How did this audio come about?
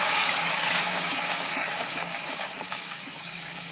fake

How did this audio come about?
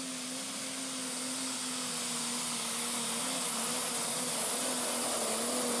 real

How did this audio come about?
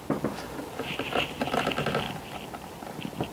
real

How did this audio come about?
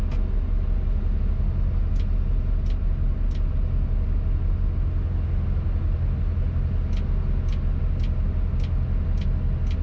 real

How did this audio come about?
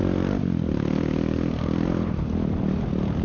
real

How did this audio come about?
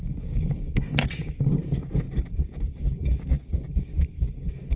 fake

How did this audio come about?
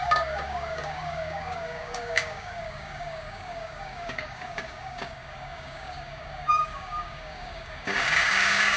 fake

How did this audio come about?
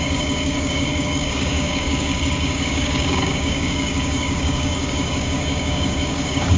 fake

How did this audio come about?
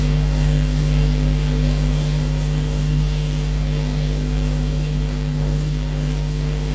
fake